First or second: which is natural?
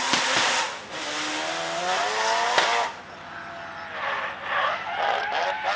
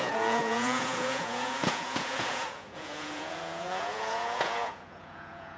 first